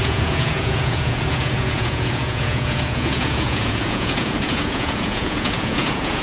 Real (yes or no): no